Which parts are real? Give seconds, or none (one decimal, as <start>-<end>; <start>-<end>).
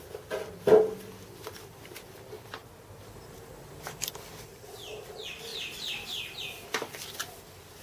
2.6-3.8; 5.5-6.4